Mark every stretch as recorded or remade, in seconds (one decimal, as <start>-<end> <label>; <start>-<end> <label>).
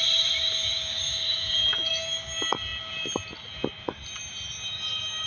0.0-1.3 recorded; 1.3-1.9 remade; 1.9-5.3 recorded